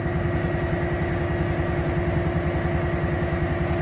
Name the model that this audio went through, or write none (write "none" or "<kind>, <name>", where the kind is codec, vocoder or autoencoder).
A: none